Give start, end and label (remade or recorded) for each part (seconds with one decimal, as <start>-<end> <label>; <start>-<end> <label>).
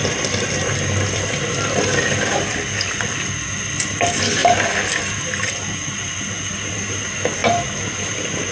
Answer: 0.0-2.6 remade; 2.6-8.5 recorded